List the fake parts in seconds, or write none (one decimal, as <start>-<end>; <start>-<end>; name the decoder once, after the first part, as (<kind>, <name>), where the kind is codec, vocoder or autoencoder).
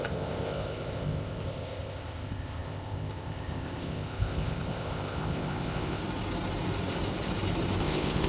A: 0.0-6.0 (codec, ZipCodec); 7.8-8.3